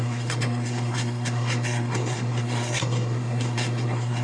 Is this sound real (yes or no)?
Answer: no